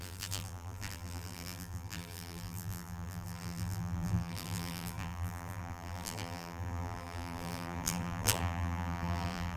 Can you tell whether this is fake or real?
fake